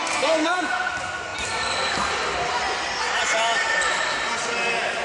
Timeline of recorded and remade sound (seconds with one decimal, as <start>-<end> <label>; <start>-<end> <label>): 0.0-0.9 remade; 0.9-5.0 recorded